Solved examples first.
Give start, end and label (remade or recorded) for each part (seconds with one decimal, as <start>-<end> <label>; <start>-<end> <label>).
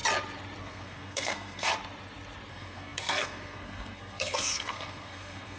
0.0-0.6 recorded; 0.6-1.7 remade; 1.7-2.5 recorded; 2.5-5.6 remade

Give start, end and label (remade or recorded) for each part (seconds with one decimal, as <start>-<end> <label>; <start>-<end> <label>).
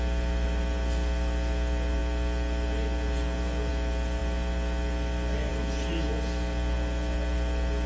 0.0-7.9 recorded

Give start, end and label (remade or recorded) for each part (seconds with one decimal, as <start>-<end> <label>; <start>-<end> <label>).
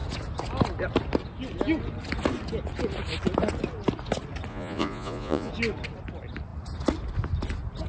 0.0-4.5 recorded; 4.5-5.5 remade; 5.5-7.9 recorded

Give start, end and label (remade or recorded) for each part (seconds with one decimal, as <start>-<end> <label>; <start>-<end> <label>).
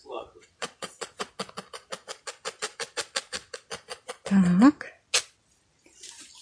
0.0-1.3 remade; 1.3-6.4 recorded